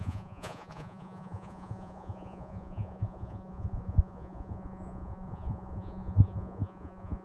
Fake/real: fake